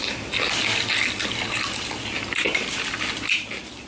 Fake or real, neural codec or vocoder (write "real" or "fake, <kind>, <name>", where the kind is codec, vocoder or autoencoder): real